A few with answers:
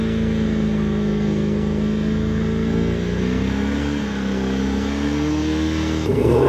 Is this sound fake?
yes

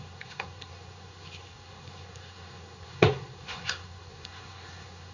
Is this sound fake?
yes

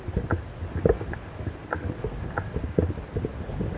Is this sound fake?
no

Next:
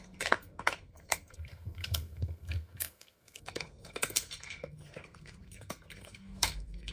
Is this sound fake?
yes